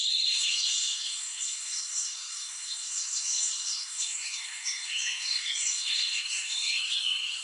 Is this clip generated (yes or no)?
yes